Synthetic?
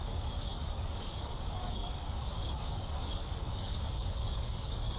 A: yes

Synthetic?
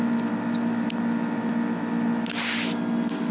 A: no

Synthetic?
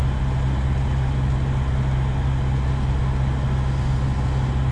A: no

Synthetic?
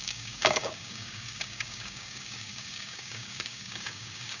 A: yes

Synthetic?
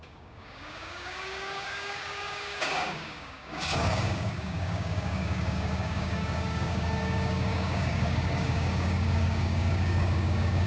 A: yes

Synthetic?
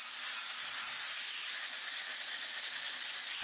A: no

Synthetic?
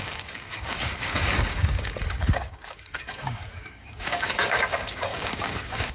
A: yes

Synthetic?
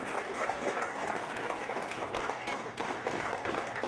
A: yes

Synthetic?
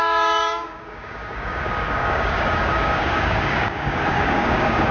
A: yes